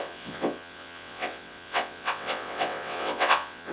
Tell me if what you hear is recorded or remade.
remade